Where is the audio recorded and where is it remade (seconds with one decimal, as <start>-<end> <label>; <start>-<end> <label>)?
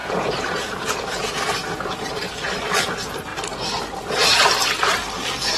0.0-2.0 remade; 2.0-5.6 recorded